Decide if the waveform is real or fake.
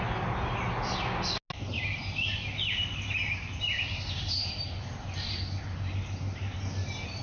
real